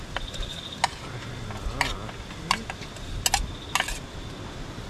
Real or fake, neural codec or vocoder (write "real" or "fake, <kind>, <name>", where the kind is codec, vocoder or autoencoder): real